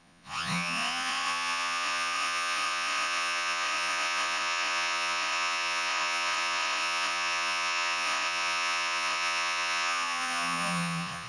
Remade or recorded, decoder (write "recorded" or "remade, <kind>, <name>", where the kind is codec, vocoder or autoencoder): remade, vocoder, Vocos